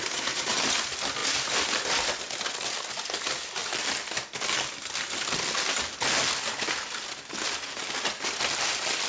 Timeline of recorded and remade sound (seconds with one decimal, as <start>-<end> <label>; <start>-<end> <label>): 0.0-9.1 recorded